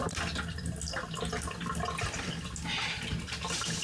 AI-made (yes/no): no